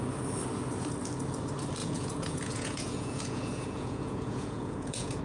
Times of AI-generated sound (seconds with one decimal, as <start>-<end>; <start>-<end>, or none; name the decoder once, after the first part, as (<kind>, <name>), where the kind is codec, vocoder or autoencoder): 1.8-5.2 (vocoder, Vocos)